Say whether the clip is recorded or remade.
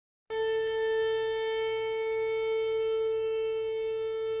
recorded